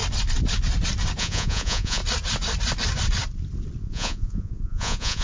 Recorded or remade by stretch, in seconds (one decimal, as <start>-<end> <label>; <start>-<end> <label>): 0.0-1.2 recorded; 1.2-2.0 remade; 2.0-3.8 recorded; 3.8-5.2 remade